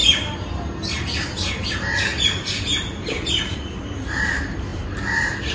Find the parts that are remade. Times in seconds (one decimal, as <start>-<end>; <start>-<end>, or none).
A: 0.0-2.1; 2.6-5.5